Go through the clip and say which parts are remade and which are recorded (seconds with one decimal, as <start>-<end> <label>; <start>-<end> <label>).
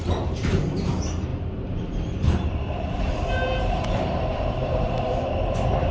0.0-5.9 remade